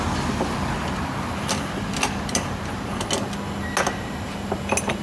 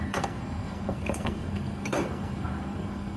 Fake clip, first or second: second